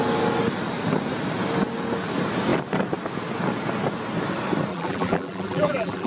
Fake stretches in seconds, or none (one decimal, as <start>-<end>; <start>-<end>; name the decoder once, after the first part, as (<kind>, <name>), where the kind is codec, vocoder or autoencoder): 4.7-6.1 (vocoder, BigVGAN v2)